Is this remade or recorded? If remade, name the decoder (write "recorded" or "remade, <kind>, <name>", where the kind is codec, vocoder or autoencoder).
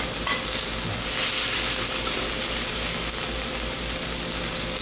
recorded